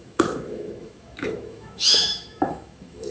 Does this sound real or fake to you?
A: fake